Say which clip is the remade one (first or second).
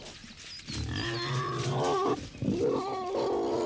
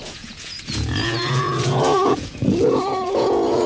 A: second